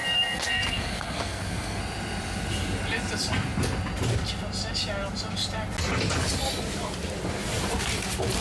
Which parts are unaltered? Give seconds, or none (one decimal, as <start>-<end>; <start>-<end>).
1.8-8.4